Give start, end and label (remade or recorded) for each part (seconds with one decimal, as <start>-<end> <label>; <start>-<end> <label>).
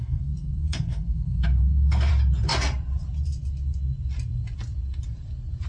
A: 0.0-2.1 remade; 2.1-5.7 recorded